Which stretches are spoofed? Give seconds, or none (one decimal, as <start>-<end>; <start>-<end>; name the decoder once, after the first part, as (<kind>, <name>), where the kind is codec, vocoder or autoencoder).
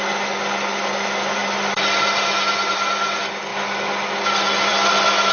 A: none